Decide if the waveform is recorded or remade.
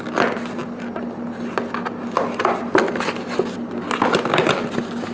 recorded